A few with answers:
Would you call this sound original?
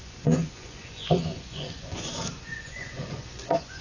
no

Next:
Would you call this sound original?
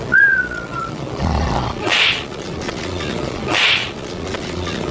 no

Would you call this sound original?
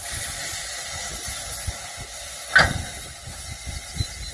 yes